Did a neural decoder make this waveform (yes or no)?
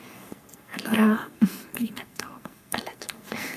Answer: yes